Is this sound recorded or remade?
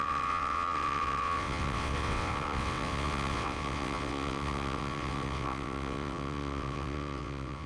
remade